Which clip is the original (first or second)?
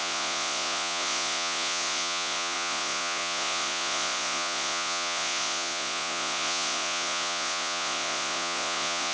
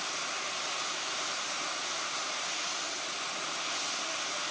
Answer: second